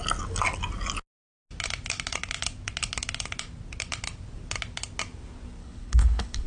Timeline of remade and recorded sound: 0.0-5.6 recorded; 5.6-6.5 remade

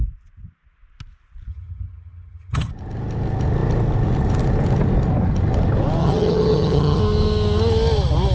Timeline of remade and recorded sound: 0.0-1.5 recorded; 1.5-2.7 remade; 2.7-6.0 recorded; 6.0-7.0 remade; 7.0-8.3 recorded